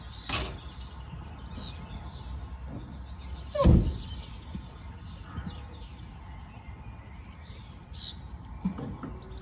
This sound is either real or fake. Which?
real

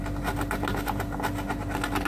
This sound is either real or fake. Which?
real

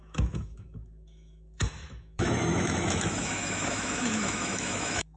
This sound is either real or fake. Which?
fake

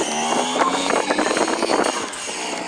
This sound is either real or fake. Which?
real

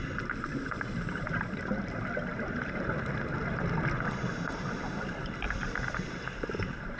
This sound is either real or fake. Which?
real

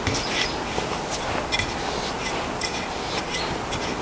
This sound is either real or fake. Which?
real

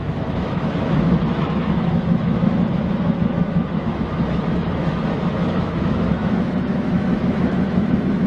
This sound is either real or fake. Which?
fake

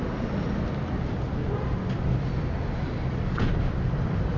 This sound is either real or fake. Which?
real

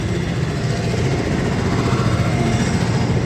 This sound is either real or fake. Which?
real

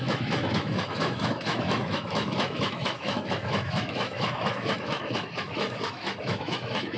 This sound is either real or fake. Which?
fake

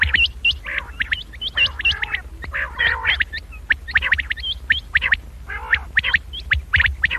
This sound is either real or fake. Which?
real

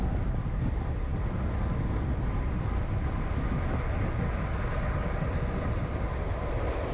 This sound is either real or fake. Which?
real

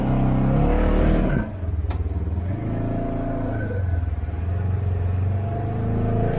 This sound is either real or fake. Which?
real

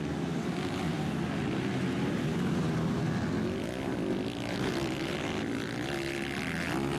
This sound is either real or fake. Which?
real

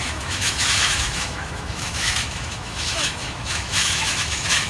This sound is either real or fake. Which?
fake